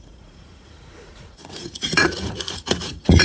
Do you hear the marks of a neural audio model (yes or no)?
yes